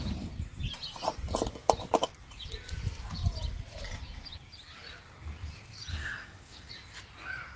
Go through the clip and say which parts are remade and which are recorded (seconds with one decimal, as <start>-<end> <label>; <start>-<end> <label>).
0.0-5.9 recorded; 5.9-6.7 remade; 6.7-7.6 recorded